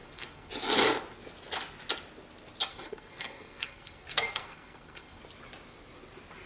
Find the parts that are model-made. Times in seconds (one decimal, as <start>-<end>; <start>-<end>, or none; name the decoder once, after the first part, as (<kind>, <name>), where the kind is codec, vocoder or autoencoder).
0.0-0.5 (codec, SNAC); 2.7-5.2